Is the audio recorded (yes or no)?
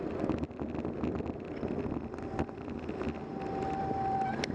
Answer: yes